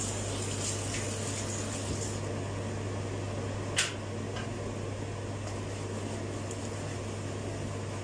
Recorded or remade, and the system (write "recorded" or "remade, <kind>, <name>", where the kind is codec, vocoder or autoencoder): recorded